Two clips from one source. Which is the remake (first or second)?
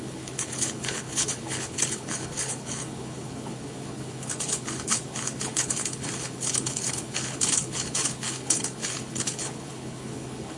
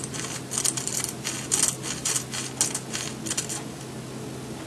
first